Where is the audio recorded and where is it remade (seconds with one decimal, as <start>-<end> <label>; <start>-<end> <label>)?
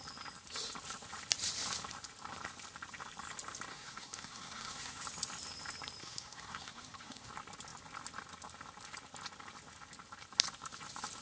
0.0-3.7 recorded; 3.7-5.0 remade; 5.0-6.0 recorded; 6.0-7.3 remade; 7.3-11.2 recorded